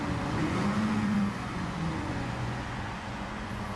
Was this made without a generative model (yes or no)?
no